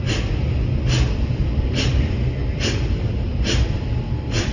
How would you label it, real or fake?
real